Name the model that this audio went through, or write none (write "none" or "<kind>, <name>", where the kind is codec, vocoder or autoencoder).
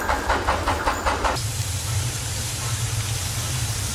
none